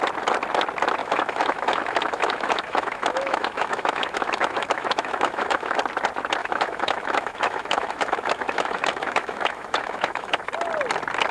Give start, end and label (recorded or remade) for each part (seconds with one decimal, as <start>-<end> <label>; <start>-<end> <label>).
0.0-1.0 recorded; 1.0-5.8 remade; 5.8-6.4 recorded; 6.4-10.5 remade; 10.5-11.3 recorded